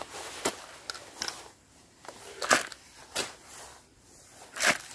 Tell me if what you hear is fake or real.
real